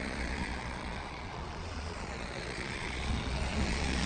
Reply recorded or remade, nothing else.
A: remade